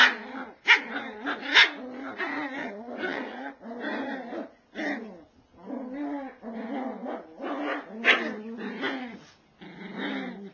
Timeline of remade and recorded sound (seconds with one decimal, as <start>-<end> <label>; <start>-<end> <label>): 0.0-2.6 recorded; 2.6-3.5 remade; 3.5-10.5 recorded

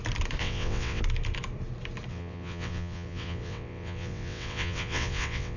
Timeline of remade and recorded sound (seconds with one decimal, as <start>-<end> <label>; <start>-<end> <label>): 0.0-0.4 recorded; 0.4-1.0 remade; 1.0-2.1 recorded; 2.1-5.6 remade

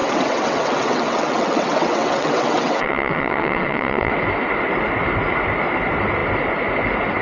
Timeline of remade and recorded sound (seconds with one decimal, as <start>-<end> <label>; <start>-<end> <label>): 0.0-4.1 remade; 4.1-7.2 recorded

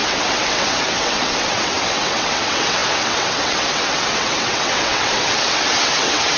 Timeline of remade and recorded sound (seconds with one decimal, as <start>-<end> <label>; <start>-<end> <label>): 0.0-6.4 remade

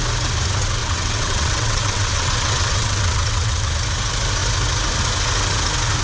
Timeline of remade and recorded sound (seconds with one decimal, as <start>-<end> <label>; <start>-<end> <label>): 0.0-0.8 recorded; 0.8-3.7 remade; 3.7-6.0 recorded

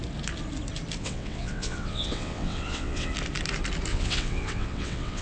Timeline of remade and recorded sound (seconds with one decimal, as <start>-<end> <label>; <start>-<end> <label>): 0.0-1.0 recorded; 1.0-3.1 remade; 3.1-3.9 recorded; 3.9-5.2 remade

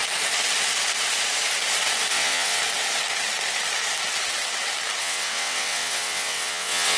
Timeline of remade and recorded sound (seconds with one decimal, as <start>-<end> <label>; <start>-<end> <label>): 0.0-2.1 recorded; 2.1-2.6 remade; 2.6-5.0 recorded; 5.0-7.0 remade

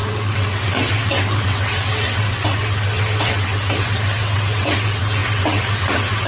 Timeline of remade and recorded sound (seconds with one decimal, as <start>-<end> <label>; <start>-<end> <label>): 0.0-6.3 remade